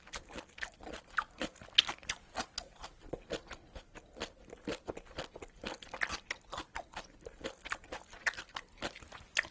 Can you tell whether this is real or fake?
real